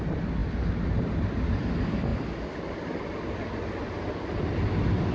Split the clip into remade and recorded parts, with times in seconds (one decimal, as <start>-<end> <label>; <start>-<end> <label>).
0.0-5.1 recorded